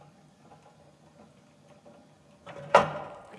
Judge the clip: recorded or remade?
remade